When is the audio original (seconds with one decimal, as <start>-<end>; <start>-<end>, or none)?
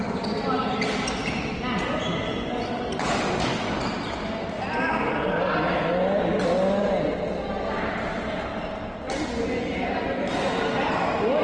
0.0-11.4